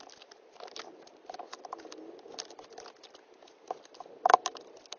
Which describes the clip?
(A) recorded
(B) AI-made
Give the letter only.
A